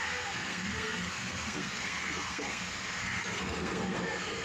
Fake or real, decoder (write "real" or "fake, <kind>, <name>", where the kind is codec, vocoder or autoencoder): fake, codec, SNAC